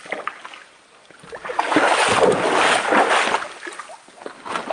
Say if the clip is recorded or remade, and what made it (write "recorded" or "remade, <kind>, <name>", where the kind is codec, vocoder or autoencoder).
recorded